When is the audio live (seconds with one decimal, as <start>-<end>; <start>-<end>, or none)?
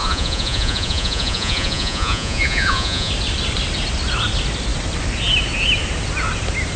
3.1-6.8